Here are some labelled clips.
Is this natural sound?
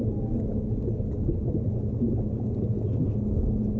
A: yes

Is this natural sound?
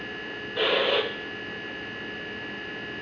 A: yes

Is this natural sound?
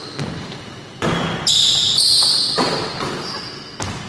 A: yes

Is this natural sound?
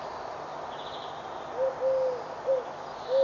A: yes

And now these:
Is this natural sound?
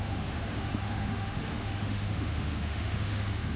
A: no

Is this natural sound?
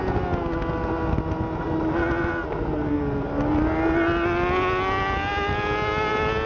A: yes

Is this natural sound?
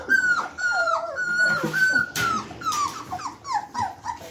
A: yes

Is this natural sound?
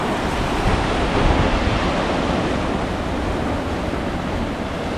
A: yes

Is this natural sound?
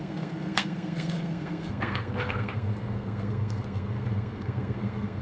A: no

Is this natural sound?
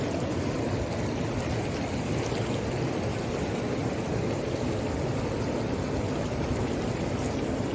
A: yes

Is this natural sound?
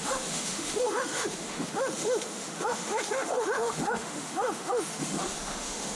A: no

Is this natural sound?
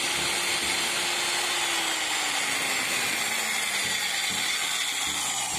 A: yes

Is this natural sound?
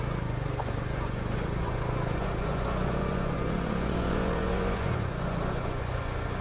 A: no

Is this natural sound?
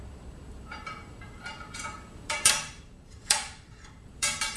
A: no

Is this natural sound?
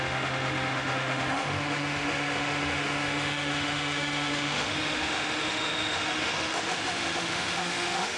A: no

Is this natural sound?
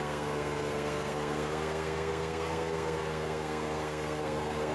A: no